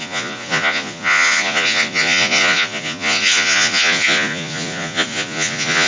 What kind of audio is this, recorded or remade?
remade